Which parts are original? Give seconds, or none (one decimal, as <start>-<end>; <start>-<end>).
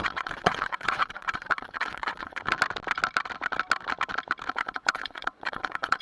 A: 2.4-4.5